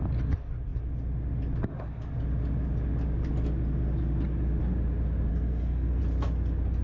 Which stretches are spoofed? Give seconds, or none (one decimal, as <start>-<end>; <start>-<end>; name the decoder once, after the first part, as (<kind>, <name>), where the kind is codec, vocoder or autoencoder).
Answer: 5.3-6.0 (codec, SNAC)